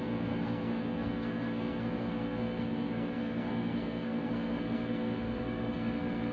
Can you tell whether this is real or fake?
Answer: fake